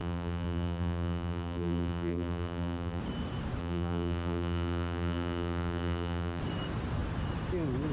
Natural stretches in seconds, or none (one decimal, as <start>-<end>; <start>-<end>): 3.0-3.6; 6.4-7.9

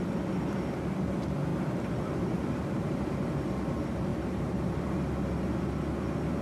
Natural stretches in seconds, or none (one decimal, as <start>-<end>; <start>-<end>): 0.0-1.5; 3.2-4.1; 5.0-6.4

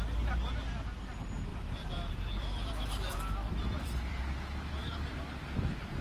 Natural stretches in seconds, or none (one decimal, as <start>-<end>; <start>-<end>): 0.0-1.5; 4.2-4.8; 5.4-6.0